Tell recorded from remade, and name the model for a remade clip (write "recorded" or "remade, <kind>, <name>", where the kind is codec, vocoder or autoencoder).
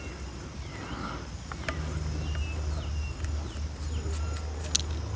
recorded